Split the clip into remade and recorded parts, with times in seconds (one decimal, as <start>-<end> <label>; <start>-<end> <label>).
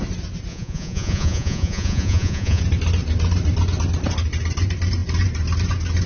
0.0-0.5 recorded; 0.5-2.6 remade; 2.6-6.1 recorded